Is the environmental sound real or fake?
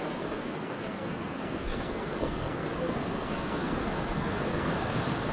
fake